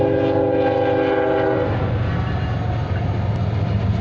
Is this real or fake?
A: real